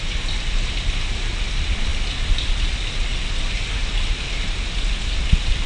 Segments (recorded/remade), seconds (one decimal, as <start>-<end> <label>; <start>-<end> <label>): 0.0-5.7 recorded

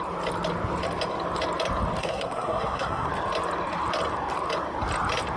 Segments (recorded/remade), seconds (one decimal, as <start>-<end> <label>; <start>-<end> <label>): 0.0-2.0 recorded; 2.0-3.1 remade; 3.1-5.4 recorded

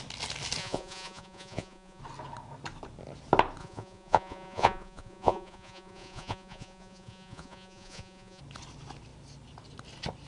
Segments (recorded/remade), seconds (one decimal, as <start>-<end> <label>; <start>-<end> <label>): 0.0-0.6 recorded; 0.6-2.0 remade; 2.0-3.6 recorded; 3.6-8.4 remade; 8.4-10.3 recorded

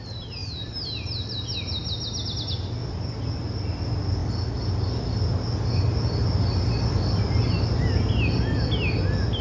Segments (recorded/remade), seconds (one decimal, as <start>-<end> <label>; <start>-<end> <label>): 0.0-9.4 recorded

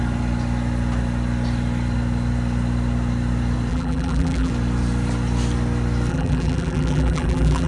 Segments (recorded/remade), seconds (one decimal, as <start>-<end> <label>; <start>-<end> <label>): 0.0-3.7 recorded; 3.7-4.5 remade; 4.5-6.1 recorded; 6.1-7.7 remade

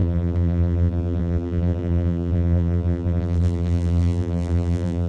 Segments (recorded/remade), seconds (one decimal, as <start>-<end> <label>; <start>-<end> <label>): 0.0-5.1 remade